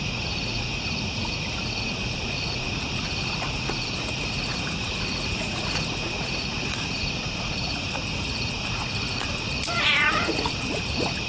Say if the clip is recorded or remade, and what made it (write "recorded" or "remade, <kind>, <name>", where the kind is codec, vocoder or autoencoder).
remade, vocoder, Vocos